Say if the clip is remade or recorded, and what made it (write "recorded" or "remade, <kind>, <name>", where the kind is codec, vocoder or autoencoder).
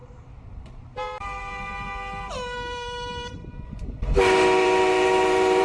remade, vocoder, BigVGAN v2